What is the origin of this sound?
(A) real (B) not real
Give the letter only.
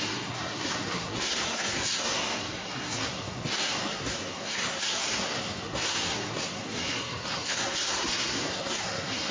B